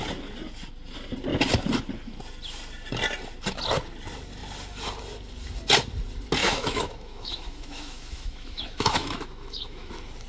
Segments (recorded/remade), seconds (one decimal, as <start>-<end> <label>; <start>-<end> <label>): 0.0-6.4 recorded; 6.4-9.9 remade; 9.9-10.3 recorded